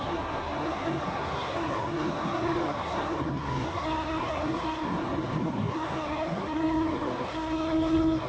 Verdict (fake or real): fake